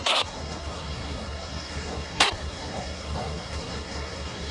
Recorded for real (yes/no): no